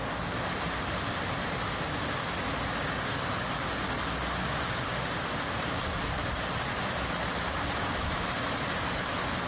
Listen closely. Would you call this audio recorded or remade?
recorded